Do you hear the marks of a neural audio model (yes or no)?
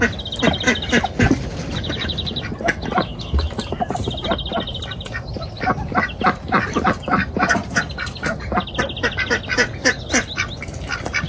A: no